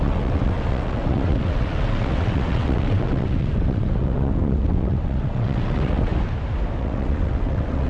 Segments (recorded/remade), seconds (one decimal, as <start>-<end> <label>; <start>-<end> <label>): 0.0-6.1 remade; 6.1-6.8 recorded; 6.8-7.9 remade